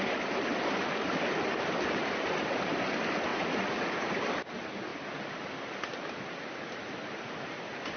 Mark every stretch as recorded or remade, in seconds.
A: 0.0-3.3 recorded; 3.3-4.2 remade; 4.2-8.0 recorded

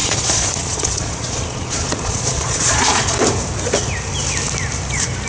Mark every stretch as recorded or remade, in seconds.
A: 0.0-3.2 remade; 3.2-5.3 recorded

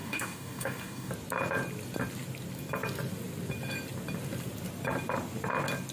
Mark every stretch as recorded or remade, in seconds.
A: 0.0-1.1 remade; 1.1-5.9 recorded

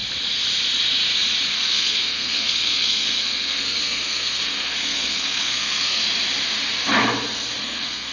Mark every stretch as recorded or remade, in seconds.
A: 0.0-1.5 recorded; 1.5-6.0 remade; 6.0-7.6 recorded; 7.6-8.1 remade

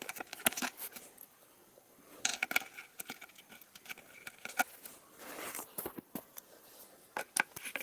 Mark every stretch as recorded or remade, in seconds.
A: 0.0-7.8 recorded

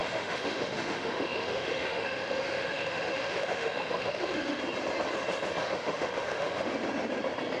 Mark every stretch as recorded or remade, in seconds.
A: 0.0-4.6 remade; 4.6-5.6 recorded; 5.6-6.7 remade; 6.7-7.6 recorded

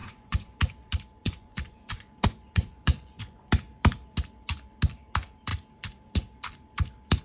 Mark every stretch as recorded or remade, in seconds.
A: 0.0-0.6 remade; 0.6-1.2 recorded; 1.2-3.4 remade; 3.4-7.2 recorded

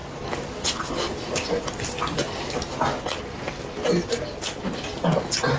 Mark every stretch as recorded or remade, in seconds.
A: 0.0-5.6 recorded